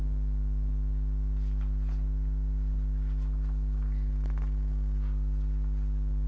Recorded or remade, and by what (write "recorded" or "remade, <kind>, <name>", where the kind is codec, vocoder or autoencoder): recorded